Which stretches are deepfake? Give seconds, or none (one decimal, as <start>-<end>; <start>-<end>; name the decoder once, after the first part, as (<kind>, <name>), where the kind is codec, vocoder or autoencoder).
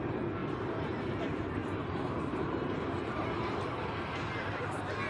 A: 0.4-1.0 (vocoder, BigVGAN v2); 1.6-3.6